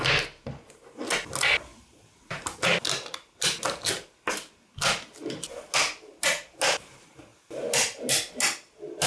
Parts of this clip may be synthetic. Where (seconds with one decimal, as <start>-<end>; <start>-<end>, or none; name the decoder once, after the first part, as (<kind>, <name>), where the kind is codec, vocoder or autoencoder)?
none